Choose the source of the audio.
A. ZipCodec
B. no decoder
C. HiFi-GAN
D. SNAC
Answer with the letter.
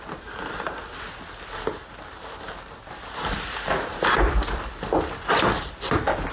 B